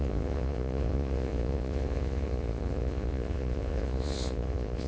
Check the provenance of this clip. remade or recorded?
remade